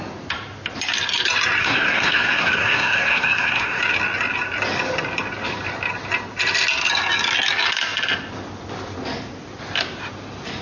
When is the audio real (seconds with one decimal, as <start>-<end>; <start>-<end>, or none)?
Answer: 0.0-1.6; 3.8-10.6